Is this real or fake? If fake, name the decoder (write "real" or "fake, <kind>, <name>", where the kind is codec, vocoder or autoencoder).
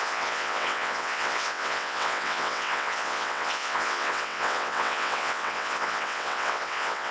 fake, vocoder, WaveNeXt